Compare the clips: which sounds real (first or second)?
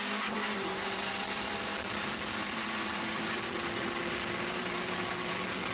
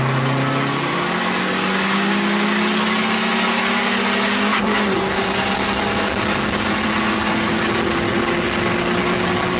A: second